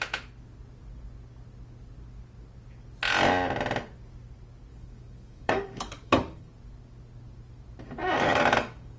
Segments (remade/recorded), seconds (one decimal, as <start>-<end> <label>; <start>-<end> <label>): 0.0-4.7 recorded; 4.7-6.5 remade; 6.5-8.0 recorded; 8.0-9.0 remade